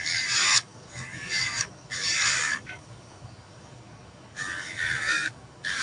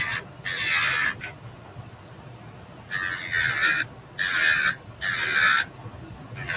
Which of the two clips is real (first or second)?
second